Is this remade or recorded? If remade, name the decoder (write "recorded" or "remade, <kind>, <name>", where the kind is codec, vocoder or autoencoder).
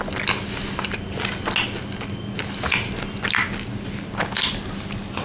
recorded